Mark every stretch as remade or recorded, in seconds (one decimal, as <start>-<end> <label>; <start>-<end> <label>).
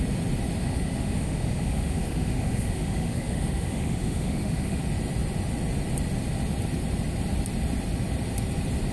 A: 0.0-0.6 recorded; 0.6-4.8 remade; 4.8-8.9 recorded